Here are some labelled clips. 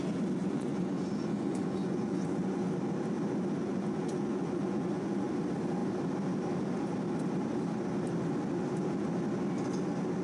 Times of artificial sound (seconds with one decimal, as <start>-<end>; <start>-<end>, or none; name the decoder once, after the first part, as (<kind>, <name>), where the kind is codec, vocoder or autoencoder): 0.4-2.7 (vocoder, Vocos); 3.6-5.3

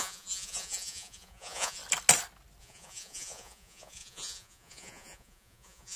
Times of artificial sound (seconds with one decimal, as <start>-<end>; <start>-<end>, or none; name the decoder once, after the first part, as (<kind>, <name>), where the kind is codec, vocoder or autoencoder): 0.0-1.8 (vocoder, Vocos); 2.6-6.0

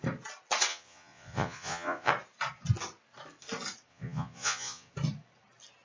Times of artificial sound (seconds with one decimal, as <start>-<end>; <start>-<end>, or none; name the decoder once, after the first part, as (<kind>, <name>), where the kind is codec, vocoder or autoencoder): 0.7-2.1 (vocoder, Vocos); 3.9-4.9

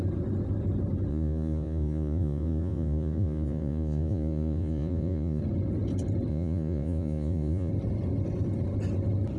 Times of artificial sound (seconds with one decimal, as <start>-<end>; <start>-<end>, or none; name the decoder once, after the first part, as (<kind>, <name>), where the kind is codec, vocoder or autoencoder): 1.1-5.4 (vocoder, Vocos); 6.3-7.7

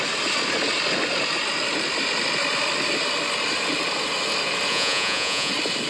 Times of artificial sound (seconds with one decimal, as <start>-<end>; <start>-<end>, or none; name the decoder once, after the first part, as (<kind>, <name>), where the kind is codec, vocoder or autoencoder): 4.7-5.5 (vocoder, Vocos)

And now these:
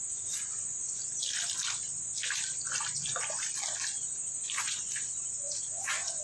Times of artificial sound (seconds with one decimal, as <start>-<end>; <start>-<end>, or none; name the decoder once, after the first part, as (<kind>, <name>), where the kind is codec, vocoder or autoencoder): 0.0-1.0 (vocoder, Vocos); 4.7-6.2